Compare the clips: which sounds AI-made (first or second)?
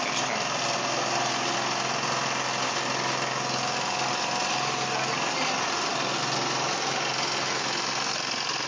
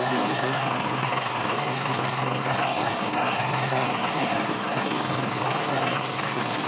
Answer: second